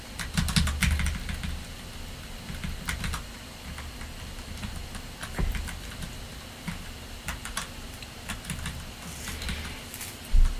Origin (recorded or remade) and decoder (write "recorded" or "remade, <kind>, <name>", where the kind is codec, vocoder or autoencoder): recorded